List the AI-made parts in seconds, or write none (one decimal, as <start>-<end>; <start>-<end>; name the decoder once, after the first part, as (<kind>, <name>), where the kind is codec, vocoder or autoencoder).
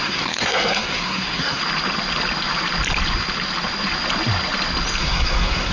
0.0-1.6 (codec, SNAC); 5.0-5.7